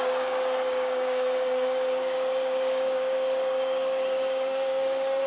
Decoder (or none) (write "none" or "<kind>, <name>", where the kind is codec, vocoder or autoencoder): codec, DAC